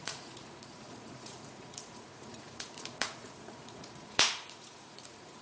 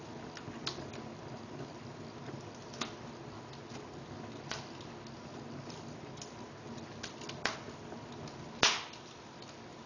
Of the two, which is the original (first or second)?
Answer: second